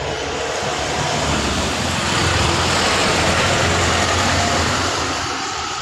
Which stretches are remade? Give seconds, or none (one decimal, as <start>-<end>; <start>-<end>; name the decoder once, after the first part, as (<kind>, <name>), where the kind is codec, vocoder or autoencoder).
3.0-5.8 (vocoder, BigVGAN v2)